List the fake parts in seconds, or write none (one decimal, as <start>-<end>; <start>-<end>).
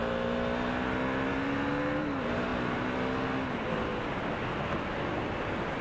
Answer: none